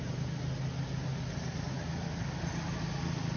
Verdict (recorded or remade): recorded